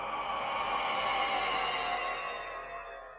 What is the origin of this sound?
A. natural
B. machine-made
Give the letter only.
A